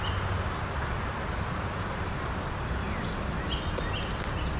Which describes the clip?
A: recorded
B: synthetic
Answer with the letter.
A